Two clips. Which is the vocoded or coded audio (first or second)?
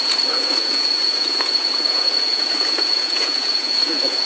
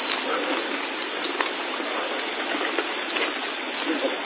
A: first